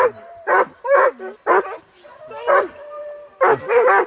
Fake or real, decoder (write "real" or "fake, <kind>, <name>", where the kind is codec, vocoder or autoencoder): real